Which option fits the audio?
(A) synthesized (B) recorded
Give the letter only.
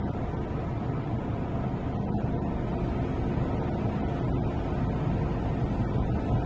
B